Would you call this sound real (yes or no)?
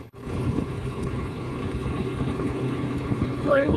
no